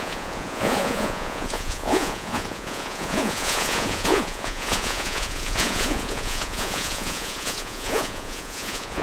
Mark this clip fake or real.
fake